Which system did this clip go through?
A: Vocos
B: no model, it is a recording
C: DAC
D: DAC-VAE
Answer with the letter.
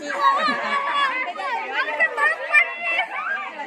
B